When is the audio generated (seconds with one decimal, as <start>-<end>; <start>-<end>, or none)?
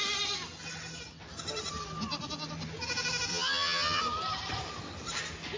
3.3-4.0